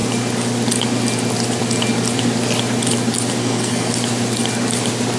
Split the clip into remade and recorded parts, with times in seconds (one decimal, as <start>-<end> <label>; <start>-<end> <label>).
0.0-3.4 recorded; 3.4-3.9 remade; 3.9-5.2 recorded